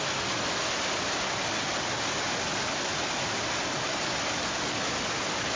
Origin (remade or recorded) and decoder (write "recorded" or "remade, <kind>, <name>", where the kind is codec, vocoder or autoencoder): recorded